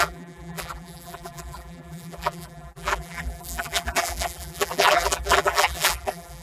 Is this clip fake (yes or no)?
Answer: yes